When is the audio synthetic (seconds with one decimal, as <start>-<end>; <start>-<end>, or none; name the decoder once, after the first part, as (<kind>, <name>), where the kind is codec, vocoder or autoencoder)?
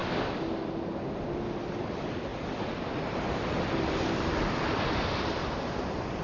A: none